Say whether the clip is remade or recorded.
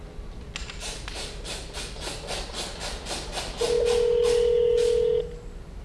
recorded